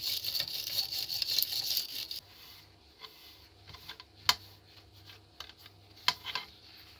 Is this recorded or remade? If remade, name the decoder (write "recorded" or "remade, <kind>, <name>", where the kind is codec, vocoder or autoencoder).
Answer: recorded